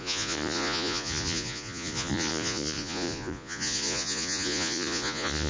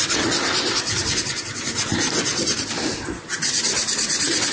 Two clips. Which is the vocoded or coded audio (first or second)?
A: first